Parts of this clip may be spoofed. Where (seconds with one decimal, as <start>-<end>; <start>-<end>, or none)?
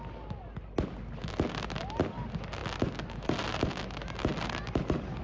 none